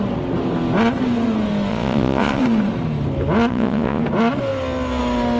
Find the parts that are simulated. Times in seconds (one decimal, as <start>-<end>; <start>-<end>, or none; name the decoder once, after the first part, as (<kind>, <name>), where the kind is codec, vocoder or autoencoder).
1.7-2.4 (vocoder, Vocos); 3.5-4.0

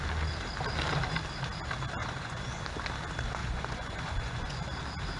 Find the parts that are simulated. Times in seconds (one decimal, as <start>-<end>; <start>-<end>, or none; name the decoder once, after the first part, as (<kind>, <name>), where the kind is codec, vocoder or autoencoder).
2.0-2.6 (vocoder, Vocos); 3.4-4.8

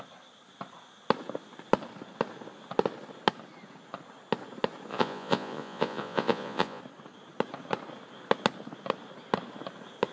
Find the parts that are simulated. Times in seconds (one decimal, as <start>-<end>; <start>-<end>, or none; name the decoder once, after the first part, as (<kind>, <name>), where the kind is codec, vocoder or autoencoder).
4.9-6.8 (vocoder, Vocos)

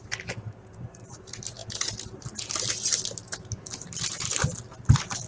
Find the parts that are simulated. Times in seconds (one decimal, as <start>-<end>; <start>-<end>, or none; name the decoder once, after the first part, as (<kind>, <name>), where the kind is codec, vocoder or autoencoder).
none

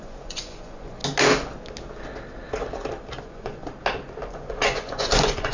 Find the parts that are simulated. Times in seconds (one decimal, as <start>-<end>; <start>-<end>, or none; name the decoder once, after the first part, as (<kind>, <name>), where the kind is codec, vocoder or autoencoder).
0.0-1.0 (vocoder, Vocos); 3.2-3.6; 4.3-5.5

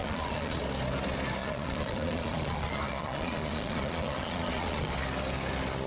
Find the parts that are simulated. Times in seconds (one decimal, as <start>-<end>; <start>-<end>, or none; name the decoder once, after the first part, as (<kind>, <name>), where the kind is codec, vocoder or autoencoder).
0.0-0.6 (vocoder, Vocos); 1.4-4.9